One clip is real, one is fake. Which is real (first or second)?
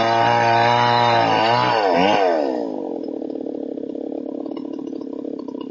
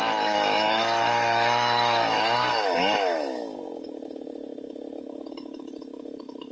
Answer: first